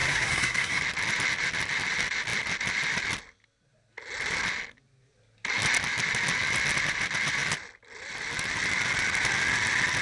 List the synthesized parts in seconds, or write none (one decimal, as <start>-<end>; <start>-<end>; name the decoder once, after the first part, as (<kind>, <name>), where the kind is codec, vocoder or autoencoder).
0.0-0.8 (codec, SNAC)